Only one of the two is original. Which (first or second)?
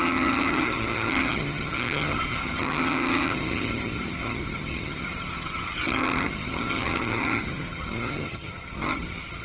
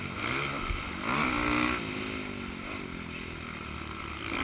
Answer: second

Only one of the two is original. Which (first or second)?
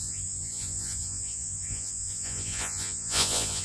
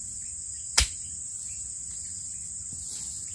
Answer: second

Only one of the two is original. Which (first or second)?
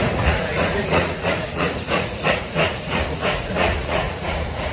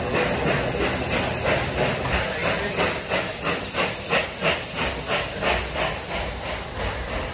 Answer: second